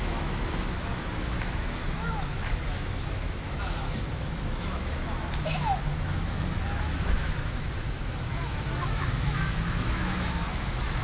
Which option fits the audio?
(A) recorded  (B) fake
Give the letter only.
B